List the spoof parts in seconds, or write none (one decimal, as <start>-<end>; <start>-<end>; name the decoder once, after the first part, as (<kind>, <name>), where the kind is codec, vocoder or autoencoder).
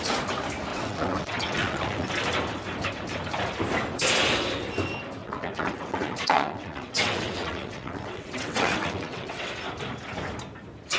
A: 0.7-2.1 (vocoder, WaveNeXt); 5.2-9.5